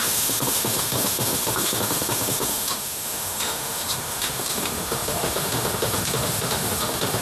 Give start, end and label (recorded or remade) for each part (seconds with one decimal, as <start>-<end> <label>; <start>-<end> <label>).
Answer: 0.0-7.2 remade